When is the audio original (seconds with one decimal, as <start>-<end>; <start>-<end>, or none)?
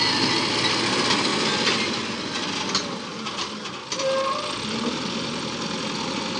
0.0-6.4